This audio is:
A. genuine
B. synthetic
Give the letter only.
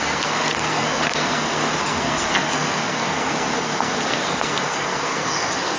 B